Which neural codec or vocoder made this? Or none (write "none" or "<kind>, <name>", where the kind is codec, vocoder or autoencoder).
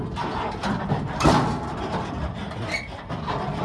none